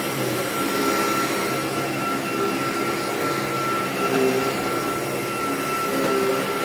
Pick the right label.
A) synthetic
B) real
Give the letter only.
B